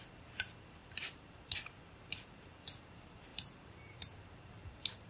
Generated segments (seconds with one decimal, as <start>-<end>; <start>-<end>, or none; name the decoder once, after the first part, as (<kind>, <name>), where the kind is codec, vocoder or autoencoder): 0.8-2.6 (vocoder, BigVGAN v2); 3.3-5.1